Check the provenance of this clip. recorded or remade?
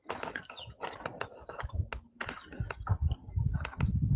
recorded